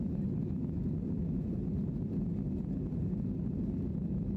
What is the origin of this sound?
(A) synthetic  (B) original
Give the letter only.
B